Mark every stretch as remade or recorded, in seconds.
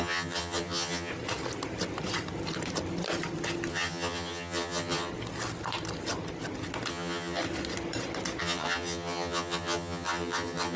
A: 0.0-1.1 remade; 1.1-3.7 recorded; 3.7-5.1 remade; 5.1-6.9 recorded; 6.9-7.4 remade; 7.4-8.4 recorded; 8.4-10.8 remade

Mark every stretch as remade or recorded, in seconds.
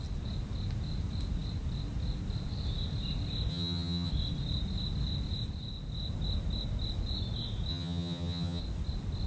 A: 0.0-3.5 recorded; 3.5-4.1 remade; 4.1-7.7 recorded; 7.7-8.6 remade; 8.6-9.3 recorded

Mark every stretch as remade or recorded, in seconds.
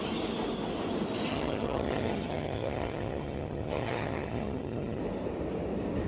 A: 0.0-1.3 recorded; 1.3-5.0 remade; 5.0-6.1 recorded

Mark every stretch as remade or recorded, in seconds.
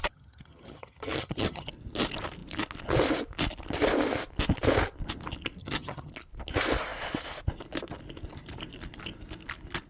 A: 0.0-1.7 remade; 1.7-5.6 recorded; 5.6-6.1 remade; 6.1-9.9 recorded